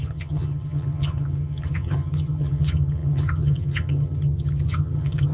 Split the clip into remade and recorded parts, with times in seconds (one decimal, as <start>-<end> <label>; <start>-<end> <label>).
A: 0.0-5.3 remade